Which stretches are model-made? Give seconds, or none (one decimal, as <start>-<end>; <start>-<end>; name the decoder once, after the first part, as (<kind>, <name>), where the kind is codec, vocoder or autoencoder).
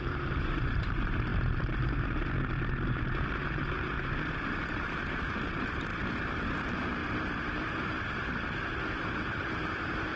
0.0-5.9 (vocoder, BigVGAN v2); 6.6-7.0; 8.9-10.2